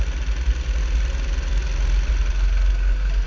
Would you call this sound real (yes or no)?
yes